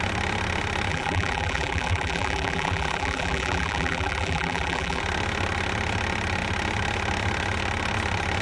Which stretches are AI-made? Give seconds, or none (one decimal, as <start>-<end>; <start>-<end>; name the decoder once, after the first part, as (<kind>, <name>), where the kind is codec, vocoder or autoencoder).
0.9-5.0 (vocoder, BigVGAN v2)